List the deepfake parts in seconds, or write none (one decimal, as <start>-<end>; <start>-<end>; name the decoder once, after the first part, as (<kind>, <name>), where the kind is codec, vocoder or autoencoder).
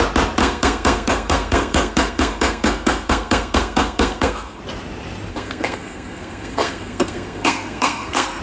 0.4-4.6 (codec, SNAC); 5.3-8.4